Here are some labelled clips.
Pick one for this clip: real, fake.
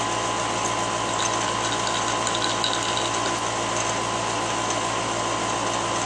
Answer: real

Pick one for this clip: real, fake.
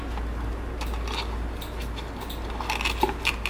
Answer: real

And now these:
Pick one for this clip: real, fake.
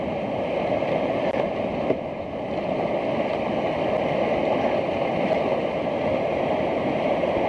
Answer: real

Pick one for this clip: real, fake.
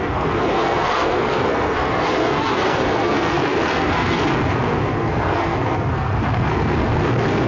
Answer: fake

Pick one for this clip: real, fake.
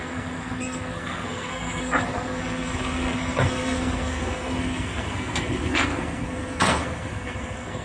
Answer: fake